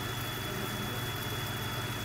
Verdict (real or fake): real